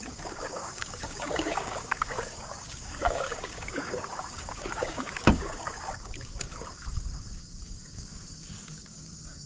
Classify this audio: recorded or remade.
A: remade